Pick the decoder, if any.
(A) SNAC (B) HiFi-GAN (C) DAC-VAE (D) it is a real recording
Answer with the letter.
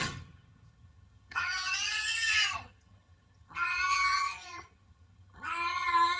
B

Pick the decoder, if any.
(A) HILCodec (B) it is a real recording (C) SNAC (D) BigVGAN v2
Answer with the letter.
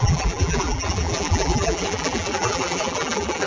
D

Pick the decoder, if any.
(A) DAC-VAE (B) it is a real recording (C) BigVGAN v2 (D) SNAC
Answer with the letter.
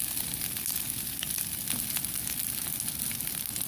B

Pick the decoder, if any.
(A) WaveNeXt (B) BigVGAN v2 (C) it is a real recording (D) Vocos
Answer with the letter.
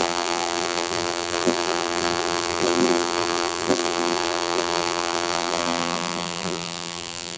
B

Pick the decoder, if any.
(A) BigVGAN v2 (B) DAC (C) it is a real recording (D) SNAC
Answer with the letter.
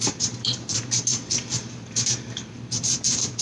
A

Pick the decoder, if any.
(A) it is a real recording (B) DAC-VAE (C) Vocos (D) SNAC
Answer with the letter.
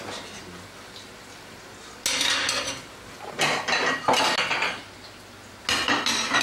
A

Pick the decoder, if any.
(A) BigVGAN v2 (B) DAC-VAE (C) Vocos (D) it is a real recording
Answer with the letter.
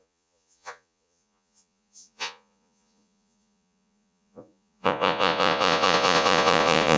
C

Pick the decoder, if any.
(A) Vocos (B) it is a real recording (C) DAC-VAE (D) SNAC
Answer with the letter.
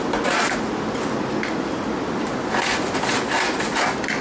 B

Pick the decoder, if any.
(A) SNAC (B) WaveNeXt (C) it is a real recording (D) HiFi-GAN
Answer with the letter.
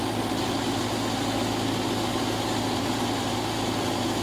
C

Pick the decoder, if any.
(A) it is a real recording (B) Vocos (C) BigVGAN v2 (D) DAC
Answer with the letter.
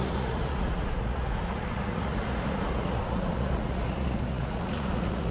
B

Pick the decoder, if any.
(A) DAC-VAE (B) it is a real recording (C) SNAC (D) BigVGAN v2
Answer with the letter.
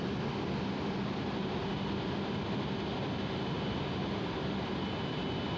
B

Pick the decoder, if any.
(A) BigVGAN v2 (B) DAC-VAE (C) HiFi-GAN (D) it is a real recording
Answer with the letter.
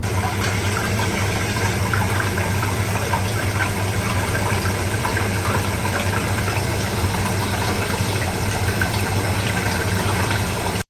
A